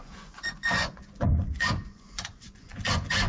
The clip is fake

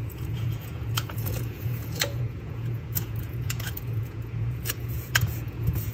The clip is fake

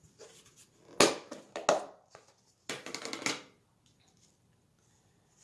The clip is real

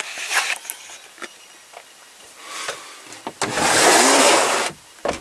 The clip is real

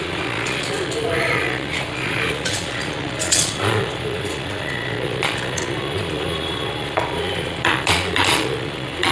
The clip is fake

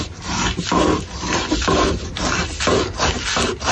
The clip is real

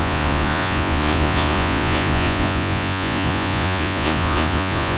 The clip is fake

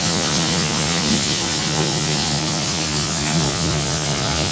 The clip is fake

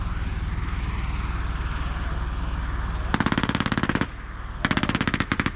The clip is real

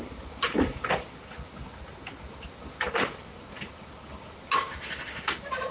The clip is real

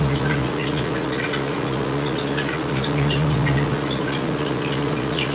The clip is fake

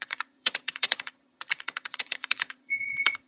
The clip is fake